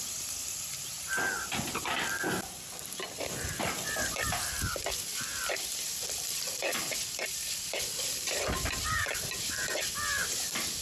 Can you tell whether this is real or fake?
fake